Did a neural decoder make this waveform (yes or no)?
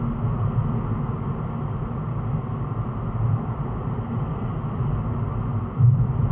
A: no